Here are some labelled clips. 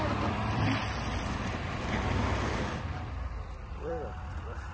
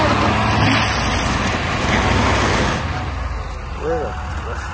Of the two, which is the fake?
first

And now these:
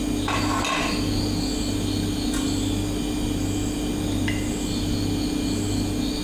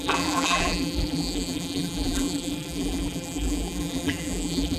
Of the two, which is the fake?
second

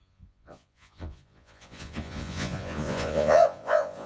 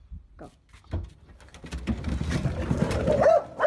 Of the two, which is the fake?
first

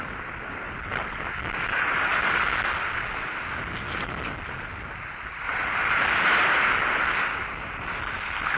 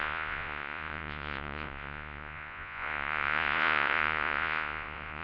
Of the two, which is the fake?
second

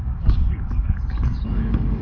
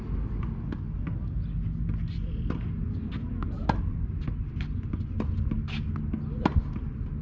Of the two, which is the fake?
first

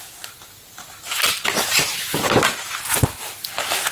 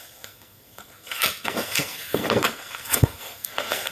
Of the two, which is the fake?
second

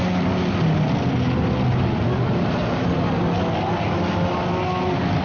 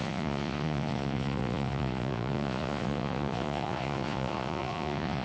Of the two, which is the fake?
second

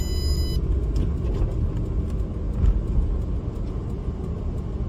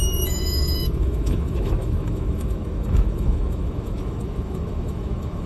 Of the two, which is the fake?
second